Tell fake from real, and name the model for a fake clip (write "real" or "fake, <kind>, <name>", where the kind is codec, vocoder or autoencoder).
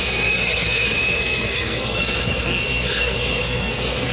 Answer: fake, codec, SNAC